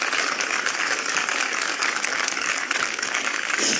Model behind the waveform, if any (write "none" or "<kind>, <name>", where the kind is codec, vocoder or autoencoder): codec, DAC